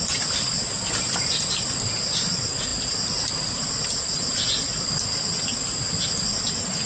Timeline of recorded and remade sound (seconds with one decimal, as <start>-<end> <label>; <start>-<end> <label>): 0.0-6.9 recorded